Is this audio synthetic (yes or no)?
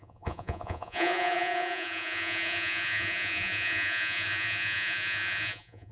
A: yes